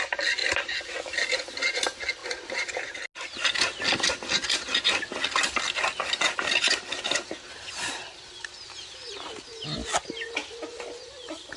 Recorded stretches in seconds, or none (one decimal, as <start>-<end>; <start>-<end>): 0.0-11.6